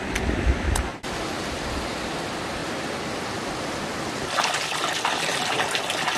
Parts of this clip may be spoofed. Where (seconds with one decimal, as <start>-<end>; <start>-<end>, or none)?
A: 0.0-0.9; 1.8-2.6; 4.8-6.2